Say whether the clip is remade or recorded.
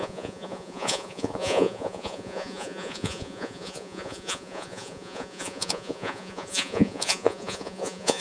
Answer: remade